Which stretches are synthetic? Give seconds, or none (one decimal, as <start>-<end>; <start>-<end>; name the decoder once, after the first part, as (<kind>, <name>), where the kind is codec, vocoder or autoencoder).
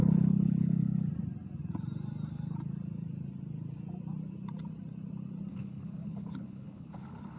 0.0-1.1 (codec, HILCodec); 5.5-7.4